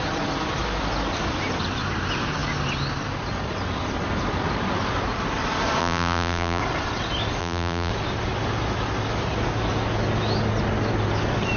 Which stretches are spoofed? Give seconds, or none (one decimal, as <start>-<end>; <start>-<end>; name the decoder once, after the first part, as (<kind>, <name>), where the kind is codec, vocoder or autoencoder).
5.8-6.6 (vocoder, BigVGAN v2); 7.4-7.9